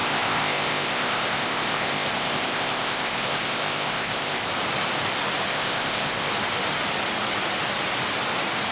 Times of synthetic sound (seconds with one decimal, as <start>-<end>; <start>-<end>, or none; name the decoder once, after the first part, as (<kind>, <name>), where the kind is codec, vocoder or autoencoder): 0.0-4.5 (codec, ZipCodec); 5.5-6.3